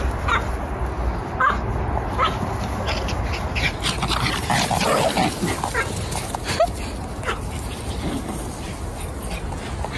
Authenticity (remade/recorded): recorded